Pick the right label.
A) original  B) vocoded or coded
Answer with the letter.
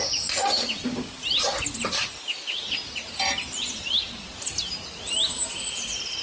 A